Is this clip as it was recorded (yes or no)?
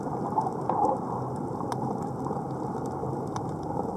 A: yes